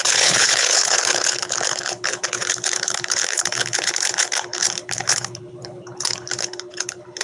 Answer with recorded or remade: remade